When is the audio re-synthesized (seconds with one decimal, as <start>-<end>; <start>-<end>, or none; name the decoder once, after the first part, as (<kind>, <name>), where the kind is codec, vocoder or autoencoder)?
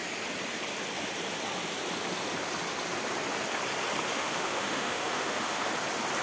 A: 4.1-5.7 (autoencoder, DAC-VAE)